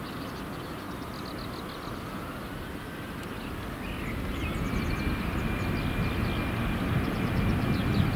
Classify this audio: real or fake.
real